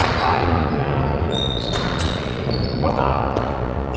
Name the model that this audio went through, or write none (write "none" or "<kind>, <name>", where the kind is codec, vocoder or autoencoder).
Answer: vocoder, Vocos